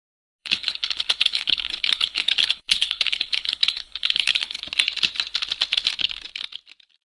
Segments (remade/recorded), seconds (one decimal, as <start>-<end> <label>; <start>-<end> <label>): 0.0-0.4 recorded; 0.4-4.6 remade; 4.6-7.2 recorded